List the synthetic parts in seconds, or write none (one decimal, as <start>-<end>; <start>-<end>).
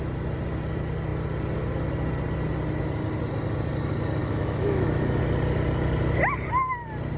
4.2-5.2